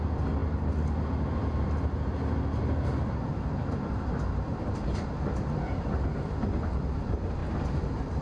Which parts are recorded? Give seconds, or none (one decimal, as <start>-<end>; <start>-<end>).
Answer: 0.0-8.2